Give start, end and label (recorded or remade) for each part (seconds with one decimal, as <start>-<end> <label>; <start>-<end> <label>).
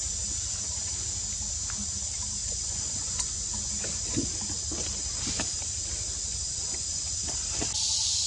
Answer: 0.0-2.4 recorded; 2.4-4.0 remade; 4.0-6.3 recorded; 6.3-7.2 remade; 7.2-8.3 recorded